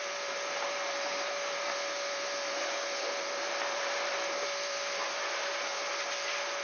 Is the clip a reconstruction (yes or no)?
yes